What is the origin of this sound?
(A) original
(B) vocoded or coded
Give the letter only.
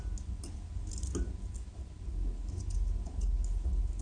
A